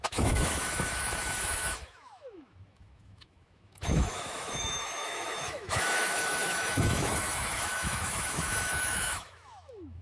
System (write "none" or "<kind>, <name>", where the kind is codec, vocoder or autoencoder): autoencoder, DAC-VAE